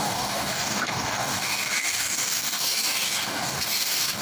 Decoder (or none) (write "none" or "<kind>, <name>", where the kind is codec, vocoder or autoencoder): codec, DAC